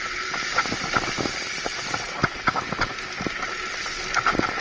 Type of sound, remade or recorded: recorded